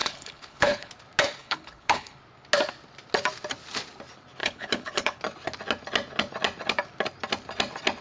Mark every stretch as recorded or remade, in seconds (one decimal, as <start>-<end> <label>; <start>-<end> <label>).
0.0-0.9 remade; 0.9-1.4 recorded; 1.4-2.2 remade; 2.2-4.4 recorded; 4.4-5.2 remade; 5.2-8.0 recorded